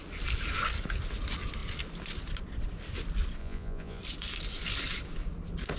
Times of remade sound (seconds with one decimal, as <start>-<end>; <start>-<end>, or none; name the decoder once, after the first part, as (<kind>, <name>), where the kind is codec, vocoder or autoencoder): 3.4-4.0 (vocoder, Vocos)